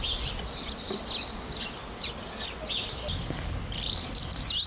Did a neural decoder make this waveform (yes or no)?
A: no